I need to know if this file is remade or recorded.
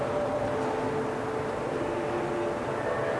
recorded